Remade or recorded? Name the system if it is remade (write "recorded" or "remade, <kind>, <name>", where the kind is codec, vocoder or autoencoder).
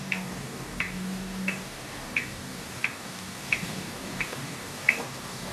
remade, codec, DAC